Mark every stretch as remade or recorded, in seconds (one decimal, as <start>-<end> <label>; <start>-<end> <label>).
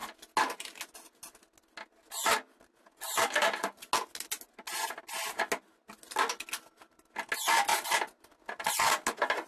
0.0-9.5 recorded